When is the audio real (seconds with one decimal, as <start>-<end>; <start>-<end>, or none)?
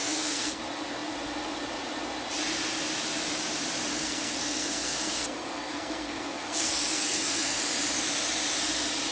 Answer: 0.6-3.9; 7.6-9.1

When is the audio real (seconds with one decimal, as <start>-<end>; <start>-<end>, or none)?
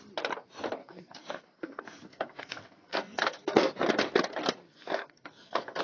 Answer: 0.0-0.8; 3.8-4.7